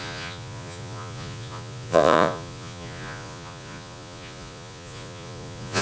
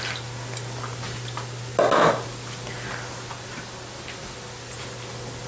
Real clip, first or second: second